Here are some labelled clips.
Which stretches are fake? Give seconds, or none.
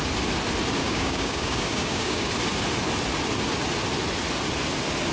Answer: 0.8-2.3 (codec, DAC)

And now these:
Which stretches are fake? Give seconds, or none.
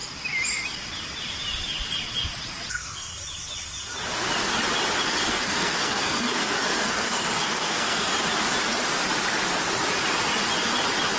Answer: 2.7-3.1 (codec, SNAC); 5.1-8.1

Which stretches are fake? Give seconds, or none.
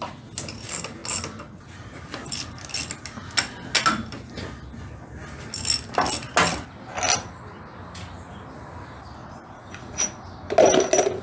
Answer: 9.2-10.2 (vocoder, Vocos)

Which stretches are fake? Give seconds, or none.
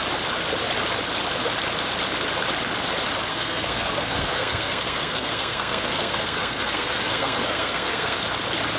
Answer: 3.3-8.2 (codec, SNAC)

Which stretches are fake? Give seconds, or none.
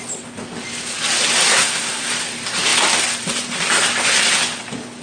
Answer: 1.5-2.1 (codec, SNAC)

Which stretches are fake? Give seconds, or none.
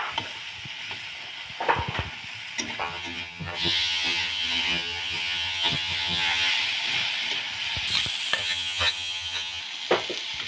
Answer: 2.8-6.5 (vocoder, HiFi-GAN); 8.4-9.6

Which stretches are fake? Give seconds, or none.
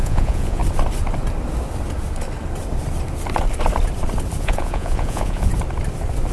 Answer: 0.0-0.6 (vocoder, Vocos); 4.4-5.5